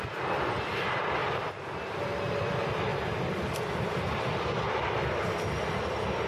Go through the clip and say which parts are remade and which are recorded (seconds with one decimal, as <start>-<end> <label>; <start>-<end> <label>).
0.0-6.3 recorded